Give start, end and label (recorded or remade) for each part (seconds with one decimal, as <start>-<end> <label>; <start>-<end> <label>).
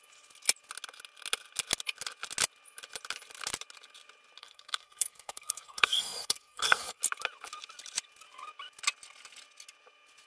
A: 0.0-4.4 recorded; 4.4-7.0 remade; 7.0-10.3 recorded